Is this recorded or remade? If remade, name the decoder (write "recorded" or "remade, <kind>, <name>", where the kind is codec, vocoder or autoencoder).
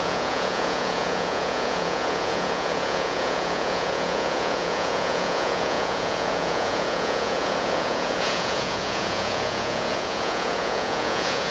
remade, vocoder, Vocos